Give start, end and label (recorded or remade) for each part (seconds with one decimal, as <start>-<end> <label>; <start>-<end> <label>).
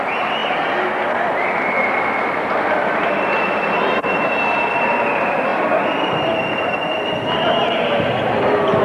0.0-5.5 recorded; 5.5-6.3 remade; 6.3-8.8 recorded